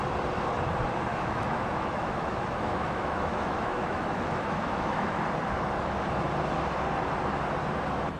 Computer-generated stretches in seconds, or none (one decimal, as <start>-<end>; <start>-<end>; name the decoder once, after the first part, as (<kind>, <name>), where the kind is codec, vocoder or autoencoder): 1.1-5.2 (autoencoder, DAC-VAE)